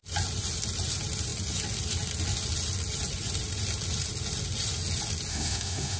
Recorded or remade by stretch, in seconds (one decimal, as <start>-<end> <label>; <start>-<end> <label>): 0.0-5.3 recorded; 5.3-6.0 remade